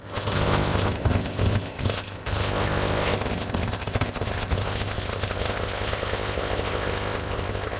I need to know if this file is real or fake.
fake